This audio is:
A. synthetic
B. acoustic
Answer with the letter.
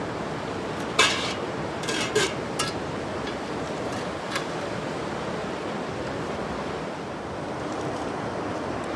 B